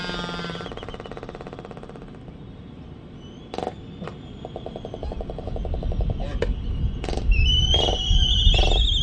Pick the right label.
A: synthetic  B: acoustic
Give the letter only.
B